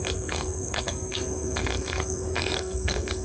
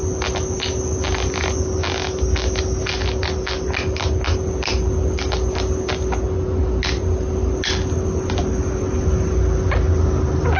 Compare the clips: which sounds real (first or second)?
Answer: second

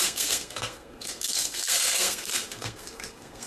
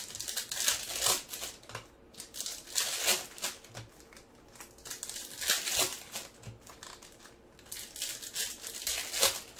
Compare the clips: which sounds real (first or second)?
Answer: second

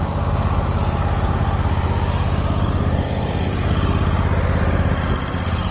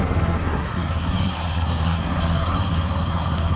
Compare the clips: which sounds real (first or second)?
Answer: first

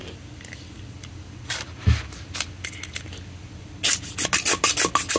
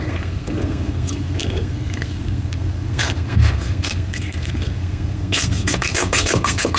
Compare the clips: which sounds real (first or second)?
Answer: first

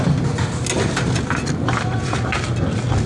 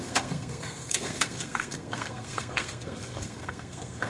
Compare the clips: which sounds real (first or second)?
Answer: first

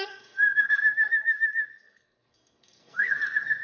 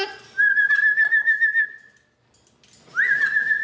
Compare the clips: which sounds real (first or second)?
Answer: second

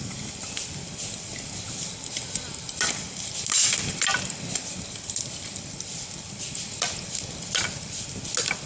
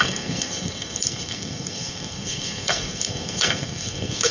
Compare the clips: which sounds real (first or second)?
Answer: first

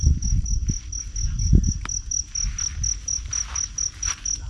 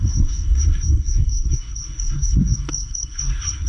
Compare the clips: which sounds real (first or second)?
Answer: first